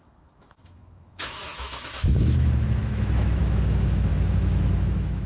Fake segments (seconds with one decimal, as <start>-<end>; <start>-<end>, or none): 0.0-5.3